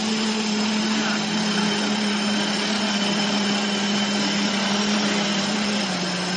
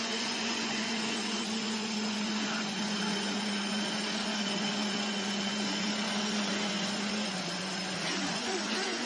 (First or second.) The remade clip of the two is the second